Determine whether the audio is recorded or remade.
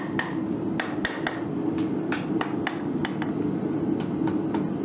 recorded